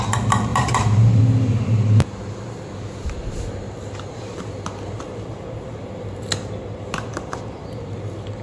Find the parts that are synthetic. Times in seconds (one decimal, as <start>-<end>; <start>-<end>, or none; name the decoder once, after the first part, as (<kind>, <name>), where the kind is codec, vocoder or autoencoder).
0.5-1.2 (vocoder, BigVGAN v2)